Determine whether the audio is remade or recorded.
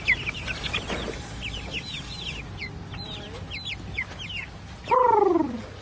recorded